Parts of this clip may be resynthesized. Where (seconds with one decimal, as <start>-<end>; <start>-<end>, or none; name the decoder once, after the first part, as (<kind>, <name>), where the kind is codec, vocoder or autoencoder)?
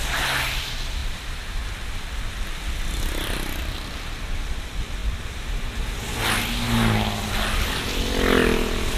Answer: none